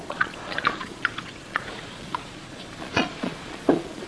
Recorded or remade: remade